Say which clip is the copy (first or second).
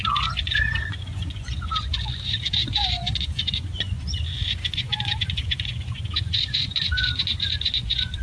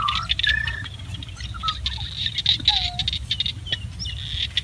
first